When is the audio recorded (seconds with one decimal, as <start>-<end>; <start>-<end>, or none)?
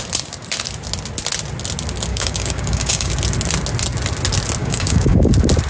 0.0-2.1; 3.1-4.6; 5.3-5.7